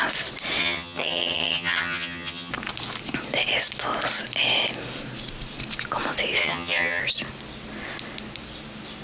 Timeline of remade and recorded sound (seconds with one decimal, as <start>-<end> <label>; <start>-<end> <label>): 0.0-0.6 recorded; 0.6-2.5 remade; 2.5-6.4 recorded; 6.4-7.0 remade; 7.0-9.0 recorded

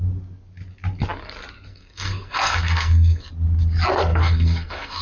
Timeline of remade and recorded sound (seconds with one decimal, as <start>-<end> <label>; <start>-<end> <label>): 0.0-1.7 recorded; 1.7-3.3 remade; 3.3-4.1 recorded; 4.1-5.0 remade

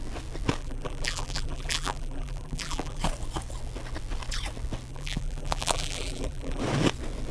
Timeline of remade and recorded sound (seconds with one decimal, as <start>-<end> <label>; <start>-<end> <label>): 0.0-0.6 recorded; 0.6-3.0 remade; 3.0-4.9 recorded; 4.9-6.6 remade; 6.6-7.3 recorded

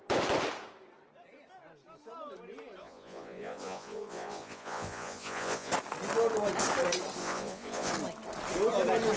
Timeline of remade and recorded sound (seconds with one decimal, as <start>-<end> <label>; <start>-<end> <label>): 0.0-2.8 recorded; 2.8-5.7 remade; 5.7-7.2 recorded; 7.2-7.9 remade; 7.9-9.2 recorded